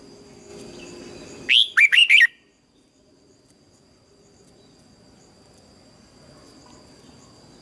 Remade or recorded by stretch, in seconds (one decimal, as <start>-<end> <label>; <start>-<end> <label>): 0.0-2.0 recorded; 2.0-3.1 remade; 3.1-7.6 recorded